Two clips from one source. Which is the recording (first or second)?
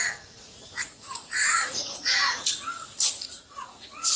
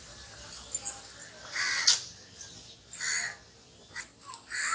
second